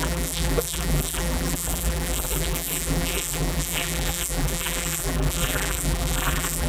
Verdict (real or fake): fake